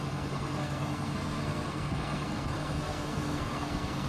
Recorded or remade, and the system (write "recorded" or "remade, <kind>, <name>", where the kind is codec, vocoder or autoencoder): remade, codec, SNAC